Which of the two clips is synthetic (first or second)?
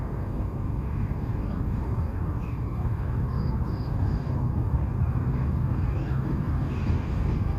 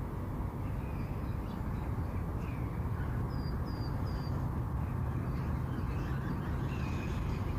first